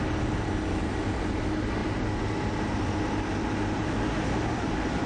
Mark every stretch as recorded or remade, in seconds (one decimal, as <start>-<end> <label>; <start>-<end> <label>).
0.0-5.1 recorded